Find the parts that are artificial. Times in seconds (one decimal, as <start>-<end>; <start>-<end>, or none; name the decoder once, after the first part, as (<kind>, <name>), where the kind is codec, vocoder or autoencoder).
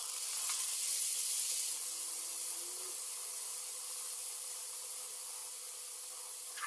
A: none